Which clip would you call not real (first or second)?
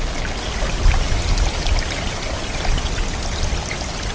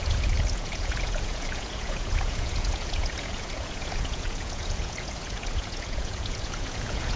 second